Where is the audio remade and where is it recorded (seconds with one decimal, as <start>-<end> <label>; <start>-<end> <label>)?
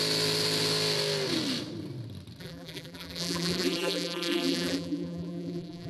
0.0-2.4 recorded; 2.4-5.9 remade